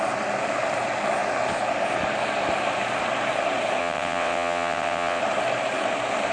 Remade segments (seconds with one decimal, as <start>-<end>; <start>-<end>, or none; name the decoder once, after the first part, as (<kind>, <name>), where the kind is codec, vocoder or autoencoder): 3.8-5.2 (vocoder, WaveNeXt)